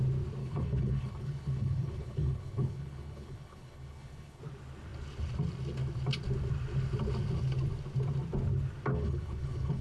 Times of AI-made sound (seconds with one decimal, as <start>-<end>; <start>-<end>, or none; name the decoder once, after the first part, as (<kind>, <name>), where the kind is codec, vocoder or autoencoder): 0.4-4.4 (codec, HILCodec); 8.9-9.8